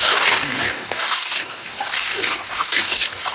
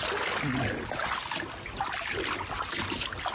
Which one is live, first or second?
second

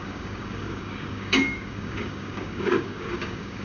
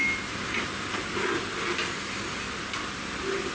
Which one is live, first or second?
second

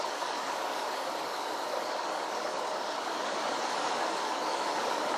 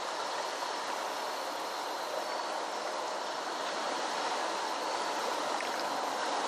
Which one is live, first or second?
second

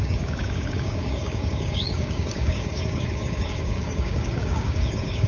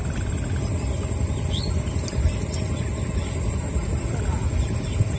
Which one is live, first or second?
second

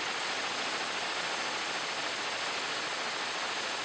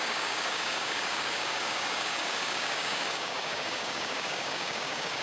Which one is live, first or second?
first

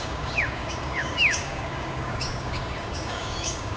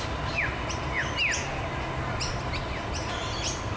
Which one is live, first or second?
second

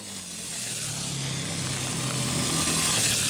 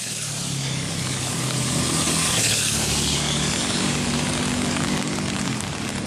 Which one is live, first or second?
first